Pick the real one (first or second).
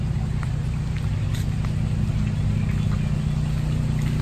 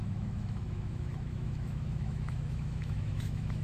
first